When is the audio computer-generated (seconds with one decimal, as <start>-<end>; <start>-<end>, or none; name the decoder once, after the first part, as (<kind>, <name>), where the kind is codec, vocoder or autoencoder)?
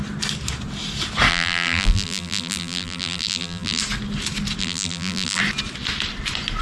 1.3-3.8 (vocoder, BigVGAN v2); 4.6-5.4